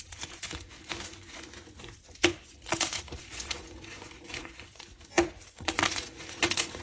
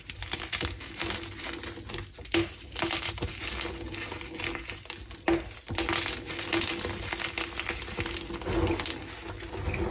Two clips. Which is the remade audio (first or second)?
first